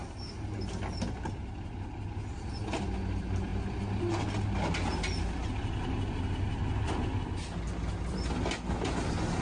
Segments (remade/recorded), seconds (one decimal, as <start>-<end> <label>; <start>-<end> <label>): 0.0-9.4 recorded